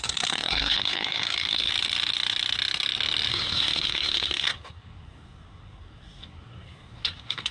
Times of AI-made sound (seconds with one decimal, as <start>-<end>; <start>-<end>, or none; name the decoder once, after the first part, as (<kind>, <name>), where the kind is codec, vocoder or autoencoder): 0.0-1.7 (codec, SNAC); 3.3-7.5